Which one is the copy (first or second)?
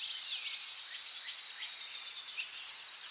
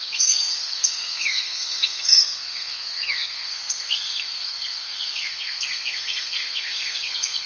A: second